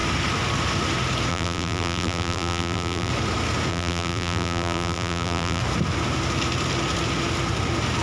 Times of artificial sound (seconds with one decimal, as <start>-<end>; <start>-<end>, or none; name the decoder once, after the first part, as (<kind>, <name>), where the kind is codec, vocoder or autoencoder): 1.3-3.1 (vocoder, BigVGAN v2); 3.7-5.6